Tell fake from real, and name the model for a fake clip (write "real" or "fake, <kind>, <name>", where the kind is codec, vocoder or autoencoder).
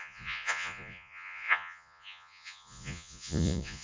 fake, vocoder, Vocos